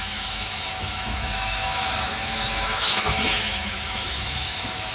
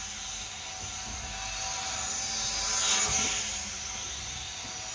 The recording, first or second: second